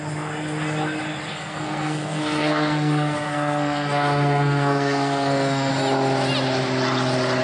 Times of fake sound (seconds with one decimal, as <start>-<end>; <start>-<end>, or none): 1.3-5.7